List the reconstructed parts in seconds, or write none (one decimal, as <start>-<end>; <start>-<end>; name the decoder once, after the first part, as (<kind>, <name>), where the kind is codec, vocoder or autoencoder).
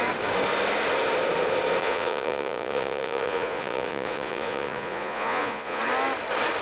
1.8-5.8 (vocoder, Vocos)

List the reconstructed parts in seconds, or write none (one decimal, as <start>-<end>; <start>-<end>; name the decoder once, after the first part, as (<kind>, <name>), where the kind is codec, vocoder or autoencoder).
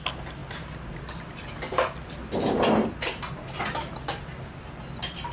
none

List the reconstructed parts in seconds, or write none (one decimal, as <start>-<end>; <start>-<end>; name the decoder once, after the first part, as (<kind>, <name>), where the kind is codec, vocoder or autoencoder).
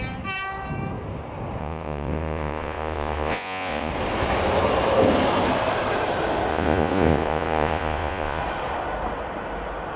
1.6-3.9 (vocoder, Vocos); 6.5-8.4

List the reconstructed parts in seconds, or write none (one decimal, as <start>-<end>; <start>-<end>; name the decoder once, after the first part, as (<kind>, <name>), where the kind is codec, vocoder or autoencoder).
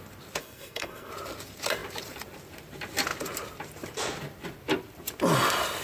0.4-1.1 (codec, SNAC)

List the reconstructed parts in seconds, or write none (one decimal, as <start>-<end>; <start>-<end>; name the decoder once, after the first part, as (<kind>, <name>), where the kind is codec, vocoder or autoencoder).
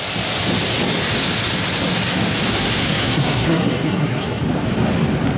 2.5-4.4 (codec, SNAC)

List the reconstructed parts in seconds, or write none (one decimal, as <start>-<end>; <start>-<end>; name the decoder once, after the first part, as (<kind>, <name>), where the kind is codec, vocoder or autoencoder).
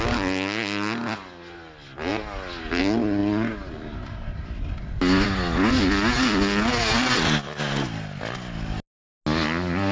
none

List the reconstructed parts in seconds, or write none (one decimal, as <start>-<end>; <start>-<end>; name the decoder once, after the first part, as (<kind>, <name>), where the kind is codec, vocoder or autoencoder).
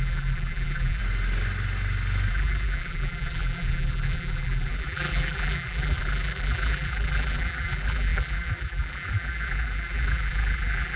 0.0-1.0 (vocoder, BigVGAN v2); 2.3-11.0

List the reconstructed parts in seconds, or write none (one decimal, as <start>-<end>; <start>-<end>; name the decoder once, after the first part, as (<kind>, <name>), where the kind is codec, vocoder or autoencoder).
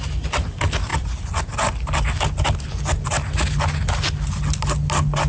none